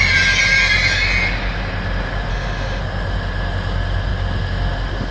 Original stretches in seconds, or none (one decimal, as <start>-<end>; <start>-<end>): 0.0-2.3; 2.8-5.1